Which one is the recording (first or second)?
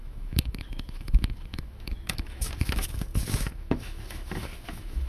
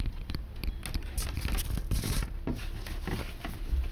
second